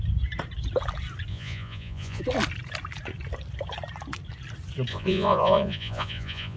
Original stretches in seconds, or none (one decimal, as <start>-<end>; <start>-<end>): 0.0-1.3; 2.2-4.9